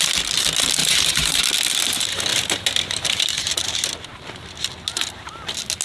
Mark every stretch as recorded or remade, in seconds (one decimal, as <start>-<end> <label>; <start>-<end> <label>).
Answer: 0.0-0.8 recorded; 0.8-1.4 remade; 1.4-5.8 recorded